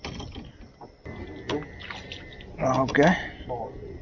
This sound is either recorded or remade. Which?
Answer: recorded